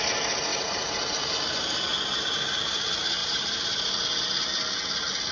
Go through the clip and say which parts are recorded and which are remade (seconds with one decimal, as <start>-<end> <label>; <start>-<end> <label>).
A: 0.0-0.5 recorded; 0.5-1.9 remade; 1.9-3.2 recorded; 3.2-3.9 remade; 3.9-5.3 recorded